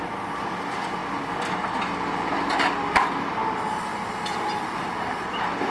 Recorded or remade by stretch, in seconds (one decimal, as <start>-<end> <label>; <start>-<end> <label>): 0.0-5.7 recorded

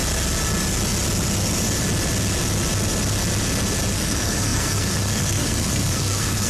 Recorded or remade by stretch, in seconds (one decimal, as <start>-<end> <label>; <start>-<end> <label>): 0.0-3.9 recorded; 3.9-6.5 remade

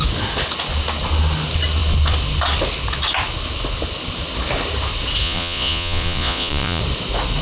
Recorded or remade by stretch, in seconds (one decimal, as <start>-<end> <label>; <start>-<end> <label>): 0.0-5.2 recorded; 5.2-6.8 remade; 6.8-7.4 recorded

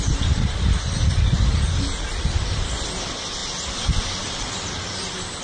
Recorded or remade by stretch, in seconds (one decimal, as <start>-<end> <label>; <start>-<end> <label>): 0.0-5.4 recorded